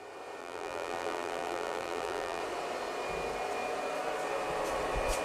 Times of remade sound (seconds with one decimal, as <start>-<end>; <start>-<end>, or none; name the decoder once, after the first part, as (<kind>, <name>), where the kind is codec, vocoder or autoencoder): 0.4-2.4 (vocoder, BigVGAN v2)